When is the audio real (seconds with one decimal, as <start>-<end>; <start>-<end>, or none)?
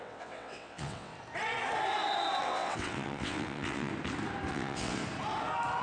1.1-2.4; 3.9-4.5; 5.0-5.8